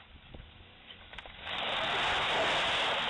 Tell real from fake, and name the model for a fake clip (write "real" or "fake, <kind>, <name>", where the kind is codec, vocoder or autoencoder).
real